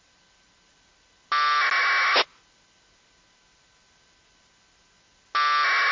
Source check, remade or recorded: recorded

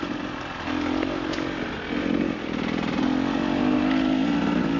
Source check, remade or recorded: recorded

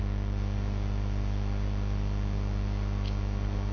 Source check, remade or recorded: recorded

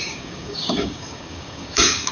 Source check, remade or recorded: remade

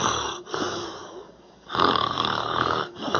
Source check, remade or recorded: remade